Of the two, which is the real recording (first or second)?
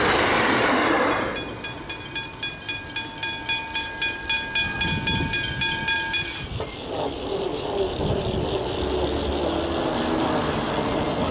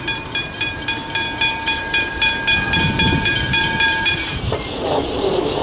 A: first